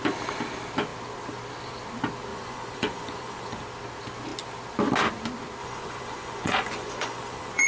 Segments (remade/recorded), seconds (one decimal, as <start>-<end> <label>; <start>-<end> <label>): 0.0-2.3 recorded; 2.3-3.6 remade; 3.6-5.6 recorded; 5.6-7.7 remade